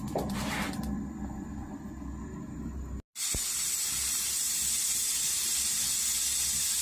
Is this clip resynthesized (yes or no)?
no